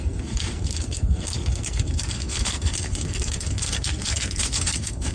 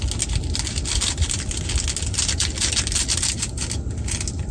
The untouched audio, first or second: second